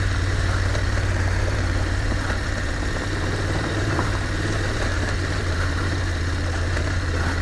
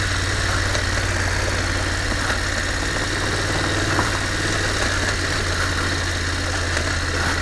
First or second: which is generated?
first